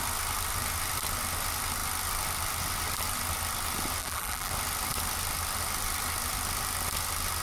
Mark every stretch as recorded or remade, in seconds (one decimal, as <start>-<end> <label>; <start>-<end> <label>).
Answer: 0.0-4.0 recorded; 4.0-4.5 remade; 4.5-7.4 recorded